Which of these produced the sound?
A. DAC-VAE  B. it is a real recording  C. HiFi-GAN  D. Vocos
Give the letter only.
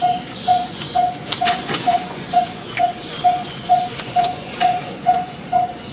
D